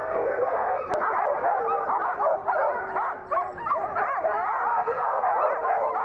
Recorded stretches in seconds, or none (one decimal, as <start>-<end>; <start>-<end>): 0.8-4.7; 5.2-6.0